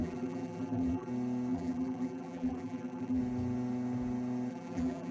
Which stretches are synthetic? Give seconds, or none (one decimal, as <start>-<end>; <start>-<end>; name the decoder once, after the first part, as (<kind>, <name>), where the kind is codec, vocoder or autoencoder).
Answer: 0.0-1.1 (vocoder, BigVGAN v2); 1.5-3.2; 4.5-5.1